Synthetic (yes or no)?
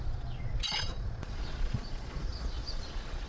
yes